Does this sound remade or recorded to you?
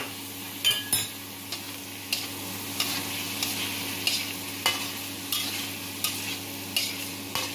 recorded